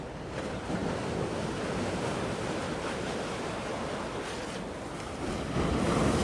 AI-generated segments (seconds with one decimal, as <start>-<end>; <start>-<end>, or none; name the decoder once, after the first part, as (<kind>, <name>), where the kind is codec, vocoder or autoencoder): none